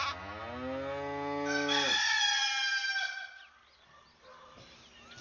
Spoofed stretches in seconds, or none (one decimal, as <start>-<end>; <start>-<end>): none